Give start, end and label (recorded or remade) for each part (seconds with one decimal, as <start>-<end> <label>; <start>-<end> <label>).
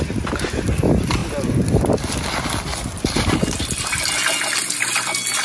0.0-5.4 recorded